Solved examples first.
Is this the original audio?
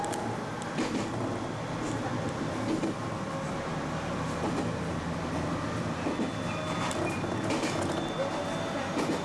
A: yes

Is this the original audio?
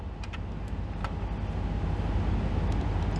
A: yes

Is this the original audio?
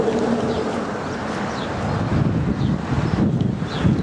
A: yes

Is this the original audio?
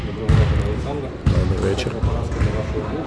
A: yes